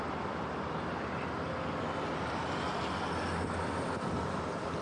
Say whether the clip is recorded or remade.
recorded